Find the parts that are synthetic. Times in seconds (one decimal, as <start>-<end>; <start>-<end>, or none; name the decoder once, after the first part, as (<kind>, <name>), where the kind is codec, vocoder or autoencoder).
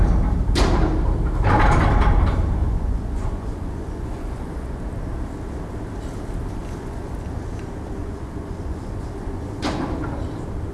2.6-4.8 (vocoder, Vocos); 6.6-7.1; 8.0-9.9